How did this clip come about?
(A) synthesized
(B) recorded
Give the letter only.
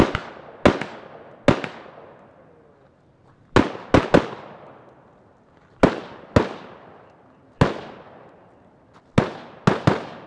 B